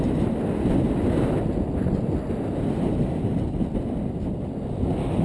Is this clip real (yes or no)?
yes